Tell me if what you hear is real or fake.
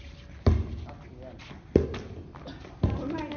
real